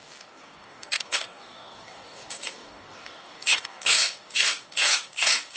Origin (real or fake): fake